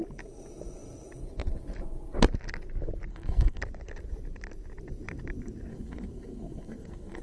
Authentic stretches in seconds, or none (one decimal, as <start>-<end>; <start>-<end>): 0.0-3.1; 3.6-5.7